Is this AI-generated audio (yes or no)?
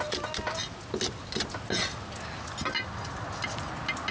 no